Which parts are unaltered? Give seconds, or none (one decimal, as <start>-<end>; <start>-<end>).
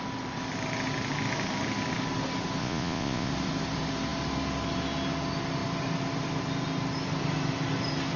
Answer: 0.0-2.6; 3.3-8.2